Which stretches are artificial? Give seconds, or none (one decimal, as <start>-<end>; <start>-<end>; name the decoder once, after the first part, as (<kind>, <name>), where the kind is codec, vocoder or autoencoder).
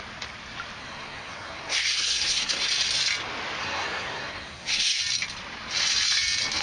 0.8-2.7 (codec, SNAC); 3.6-5.0